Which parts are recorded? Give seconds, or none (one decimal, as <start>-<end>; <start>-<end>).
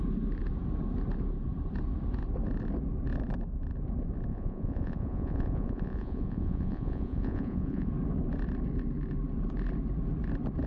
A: 0.0-4.3; 7.9-10.7